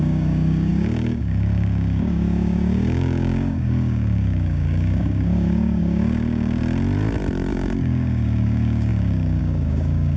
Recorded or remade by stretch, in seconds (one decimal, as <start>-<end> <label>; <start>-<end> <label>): 0.0-6.6 remade; 6.6-7.5 recorded; 7.5-10.2 remade